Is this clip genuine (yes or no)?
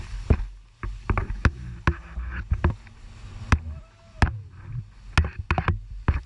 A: yes